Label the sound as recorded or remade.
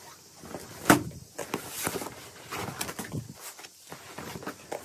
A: recorded